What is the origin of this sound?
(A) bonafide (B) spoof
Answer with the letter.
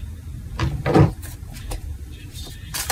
B